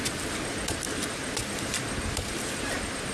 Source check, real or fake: real